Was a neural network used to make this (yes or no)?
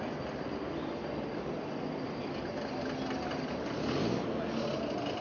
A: no